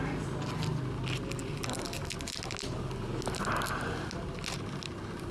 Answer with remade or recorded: recorded